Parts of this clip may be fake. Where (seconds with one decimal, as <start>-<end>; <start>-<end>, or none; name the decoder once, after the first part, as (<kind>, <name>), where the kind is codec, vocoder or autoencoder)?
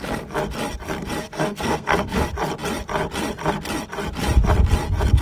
1.2-2.2 (codec, SNAC)